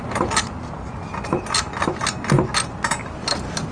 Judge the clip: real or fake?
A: real